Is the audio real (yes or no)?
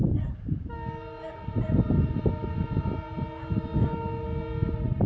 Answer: yes